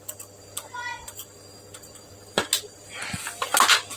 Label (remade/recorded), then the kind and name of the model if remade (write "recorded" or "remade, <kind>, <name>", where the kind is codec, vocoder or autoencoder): recorded